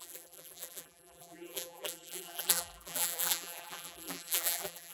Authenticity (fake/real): fake